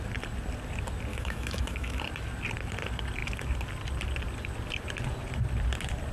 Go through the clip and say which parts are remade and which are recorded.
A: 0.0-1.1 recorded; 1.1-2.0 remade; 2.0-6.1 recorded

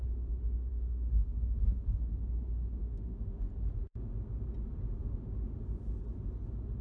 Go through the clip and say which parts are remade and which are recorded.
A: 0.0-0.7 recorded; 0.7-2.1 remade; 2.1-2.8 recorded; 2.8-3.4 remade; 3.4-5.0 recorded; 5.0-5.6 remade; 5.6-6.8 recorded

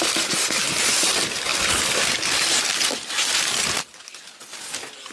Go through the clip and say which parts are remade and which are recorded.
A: 0.0-5.1 recorded

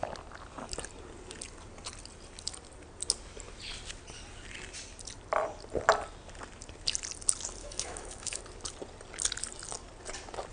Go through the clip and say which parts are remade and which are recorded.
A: 0.0-7.6 recorded; 7.6-8.4 remade; 8.4-10.5 recorded

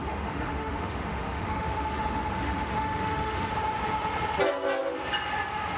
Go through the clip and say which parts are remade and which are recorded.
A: 0.0-3.5 remade; 3.5-5.8 recorded

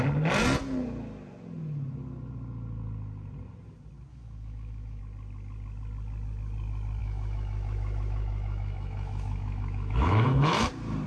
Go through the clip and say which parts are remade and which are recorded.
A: 0.0-4.1 recorded; 4.1-5.0 remade; 5.0-7.0 recorded; 7.0-10.7 remade; 10.7-11.1 recorded